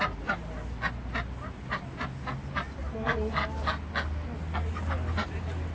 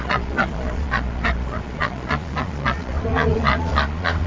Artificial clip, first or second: second